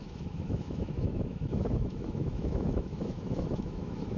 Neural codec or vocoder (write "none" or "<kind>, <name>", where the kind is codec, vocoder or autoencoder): autoencoder, DAC-VAE